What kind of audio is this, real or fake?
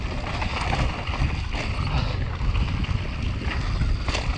real